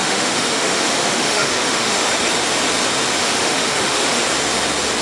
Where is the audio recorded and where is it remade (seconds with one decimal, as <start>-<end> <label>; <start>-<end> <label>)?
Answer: 0.0-2.1 remade; 2.1-3.2 recorded; 3.2-4.2 remade; 4.2-5.0 recorded